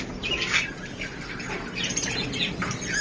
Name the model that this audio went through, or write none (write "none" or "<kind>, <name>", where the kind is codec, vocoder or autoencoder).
none